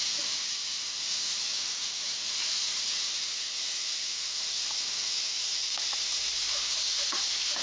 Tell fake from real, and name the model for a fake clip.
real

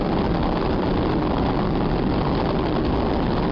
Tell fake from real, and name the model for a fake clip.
real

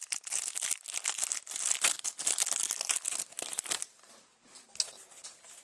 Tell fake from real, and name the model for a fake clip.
real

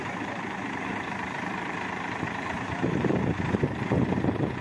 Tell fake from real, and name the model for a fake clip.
fake, vocoder, BigVGAN v2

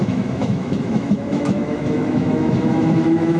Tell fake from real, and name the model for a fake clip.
fake, autoencoder, DAC-VAE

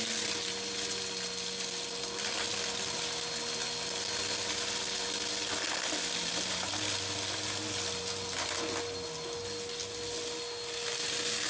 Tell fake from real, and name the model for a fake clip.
real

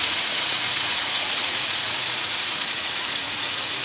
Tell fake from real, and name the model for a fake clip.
fake, vocoder, Vocos